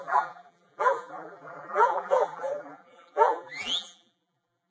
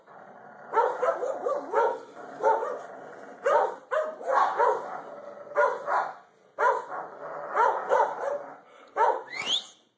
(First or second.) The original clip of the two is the second